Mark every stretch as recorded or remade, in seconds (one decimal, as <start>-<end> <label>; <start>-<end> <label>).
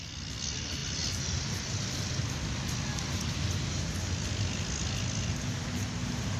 0.0-6.4 recorded